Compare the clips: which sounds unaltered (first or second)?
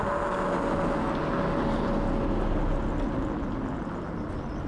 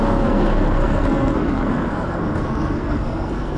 first